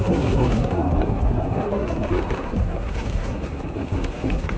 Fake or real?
fake